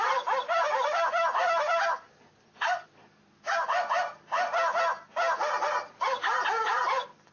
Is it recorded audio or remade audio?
recorded